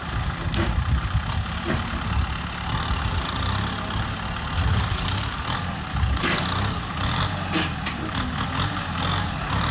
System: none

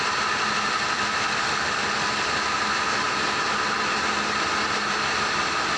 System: none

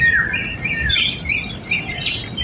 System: none